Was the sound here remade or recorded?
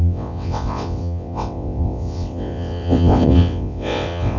remade